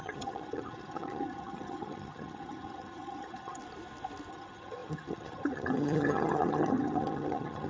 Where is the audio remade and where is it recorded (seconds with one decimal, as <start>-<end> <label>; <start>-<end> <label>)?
0.0-3.6 remade; 3.6-4.3 recorded; 4.3-7.7 remade